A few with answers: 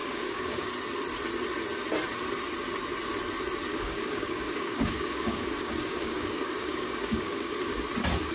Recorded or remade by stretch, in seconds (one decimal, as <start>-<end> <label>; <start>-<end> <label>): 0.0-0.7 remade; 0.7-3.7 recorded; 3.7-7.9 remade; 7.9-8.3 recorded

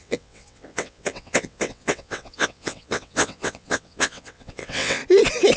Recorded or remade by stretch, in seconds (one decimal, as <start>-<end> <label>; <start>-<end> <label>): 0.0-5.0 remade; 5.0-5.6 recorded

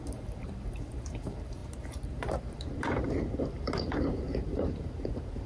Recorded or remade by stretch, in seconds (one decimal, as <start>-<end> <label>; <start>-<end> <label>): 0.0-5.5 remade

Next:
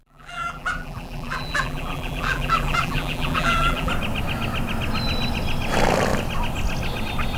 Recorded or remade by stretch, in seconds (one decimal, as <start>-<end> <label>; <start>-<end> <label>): 0.0-3.9 remade; 3.9-7.4 recorded

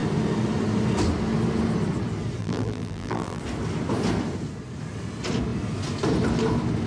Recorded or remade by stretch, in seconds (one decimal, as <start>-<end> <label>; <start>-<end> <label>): 0.0-2.4 recorded; 2.4-3.4 remade; 3.4-6.9 recorded

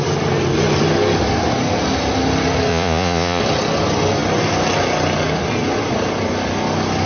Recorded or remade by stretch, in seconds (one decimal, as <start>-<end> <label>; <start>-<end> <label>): 0.0-2.7 recorded; 2.7-3.4 remade; 3.4-7.1 recorded

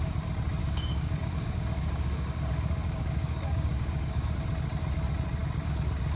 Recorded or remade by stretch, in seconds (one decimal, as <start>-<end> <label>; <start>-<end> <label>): 0.0-0.6 recorded; 0.6-4.3 remade; 4.3-6.2 recorded